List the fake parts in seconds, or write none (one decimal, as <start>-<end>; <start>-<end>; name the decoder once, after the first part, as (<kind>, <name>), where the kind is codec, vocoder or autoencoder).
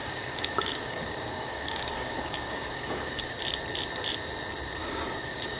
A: 0.0-3.4 (codec, DAC); 4.8-5.6